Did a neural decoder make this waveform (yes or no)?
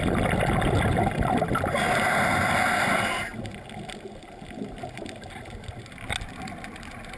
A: no